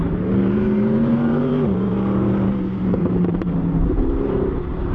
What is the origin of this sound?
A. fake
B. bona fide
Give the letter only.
A